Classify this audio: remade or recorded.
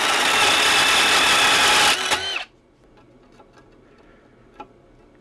recorded